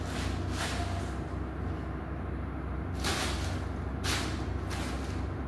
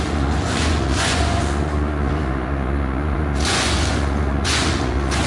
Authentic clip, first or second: first